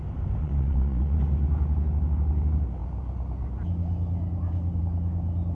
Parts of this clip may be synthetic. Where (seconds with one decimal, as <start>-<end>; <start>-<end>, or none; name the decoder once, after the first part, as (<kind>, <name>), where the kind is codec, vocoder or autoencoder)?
0.4-1.2 (vocoder, Vocos)